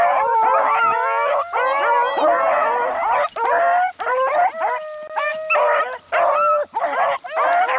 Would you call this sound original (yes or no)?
yes